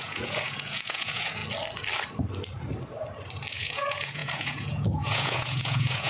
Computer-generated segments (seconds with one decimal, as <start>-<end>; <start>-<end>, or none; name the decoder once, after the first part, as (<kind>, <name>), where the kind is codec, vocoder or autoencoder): 0.0-1.4 (vocoder, Vocos); 3.5-6.1